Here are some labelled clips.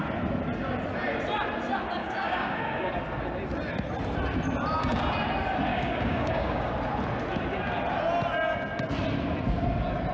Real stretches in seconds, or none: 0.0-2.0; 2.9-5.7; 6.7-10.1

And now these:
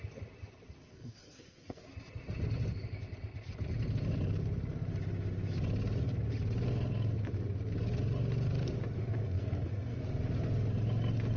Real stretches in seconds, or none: 0.0-0.8; 1.8-9.2; 10.0-11.4

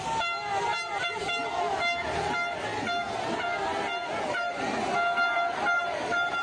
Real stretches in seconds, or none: 0.0-6.4

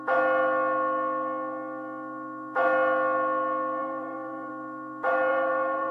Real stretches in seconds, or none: 0.0-3.8; 4.5-5.3